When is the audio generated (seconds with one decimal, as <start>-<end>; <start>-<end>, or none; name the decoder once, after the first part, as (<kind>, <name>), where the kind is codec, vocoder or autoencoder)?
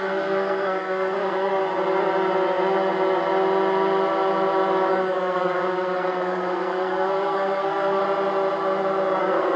0.0-1.6 (codec, SNAC); 4.9-8.0; 9.2-9.6